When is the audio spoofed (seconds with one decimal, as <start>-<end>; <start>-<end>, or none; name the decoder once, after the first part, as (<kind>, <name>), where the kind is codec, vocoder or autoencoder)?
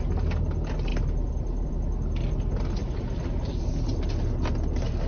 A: 0.9-1.7 (vocoder, BigVGAN v2); 2.8-3.7